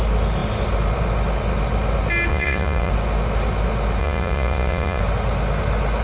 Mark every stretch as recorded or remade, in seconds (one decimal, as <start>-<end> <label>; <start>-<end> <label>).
0.0-2.3 recorded; 2.3-2.9 remade; 2.9-4.0 recorded; 4.0-5.0 remade; 5.0-6.0 recorded